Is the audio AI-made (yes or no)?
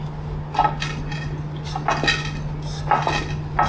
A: no